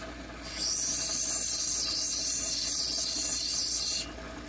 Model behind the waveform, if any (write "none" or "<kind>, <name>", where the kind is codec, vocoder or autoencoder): none